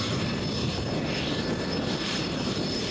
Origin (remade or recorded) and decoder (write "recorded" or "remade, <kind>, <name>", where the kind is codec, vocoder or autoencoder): recorded